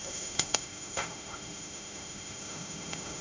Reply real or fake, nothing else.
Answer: fake